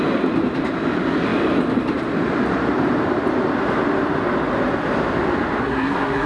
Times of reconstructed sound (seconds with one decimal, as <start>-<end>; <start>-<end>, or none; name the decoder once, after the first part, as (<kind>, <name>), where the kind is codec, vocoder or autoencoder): 5.6-6.3 (codec, SNAC)